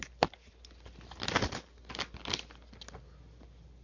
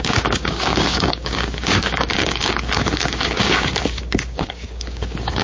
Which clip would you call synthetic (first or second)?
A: second